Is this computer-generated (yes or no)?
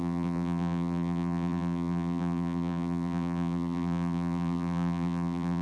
yes